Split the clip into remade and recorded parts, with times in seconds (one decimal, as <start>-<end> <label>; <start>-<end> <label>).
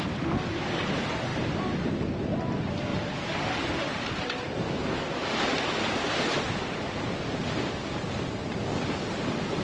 0.0-1.3 recorded; 1.3-1.9 remade; 1.9-2.9 recorded; 2.9-8.2 remade; 8.2-9.6 recorded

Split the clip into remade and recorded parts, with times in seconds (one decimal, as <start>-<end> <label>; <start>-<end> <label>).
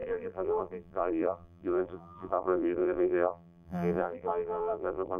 0.0-5.2 remade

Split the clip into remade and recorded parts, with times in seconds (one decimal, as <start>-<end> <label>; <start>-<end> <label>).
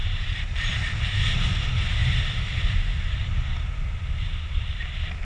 0.0-0.8 remade; 0.8-5.2 recorded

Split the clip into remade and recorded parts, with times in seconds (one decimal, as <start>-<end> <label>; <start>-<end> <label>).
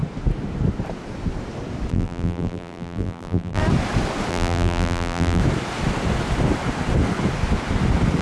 0.0-1.9 recorded; 1.9-3.6 remade; 3.6-4.3 recorded; 4.3-5.4 remade; 5.4-8.2 recorded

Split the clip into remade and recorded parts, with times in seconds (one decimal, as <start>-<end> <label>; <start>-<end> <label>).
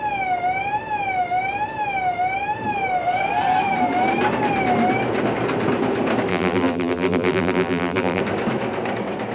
0.0-6.3 recorded; 6.3-8.2 remade; 8.2-9.3 recorded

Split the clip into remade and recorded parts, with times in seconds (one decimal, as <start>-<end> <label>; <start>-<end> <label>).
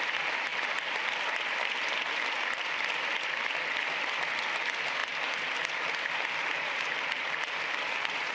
0.0-0.5 recorded; 0.5-2.7 remade; 2.7-8.3 recorded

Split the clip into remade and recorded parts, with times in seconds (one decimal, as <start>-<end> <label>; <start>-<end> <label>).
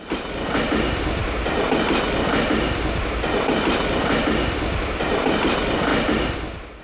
0.0-1.2 remade; 1.2-3.3 recorded; 3.3-5.9 remade; 5.9-6.8 recorded